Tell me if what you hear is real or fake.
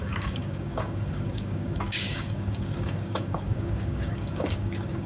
fake